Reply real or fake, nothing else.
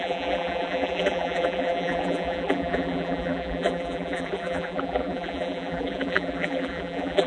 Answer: fake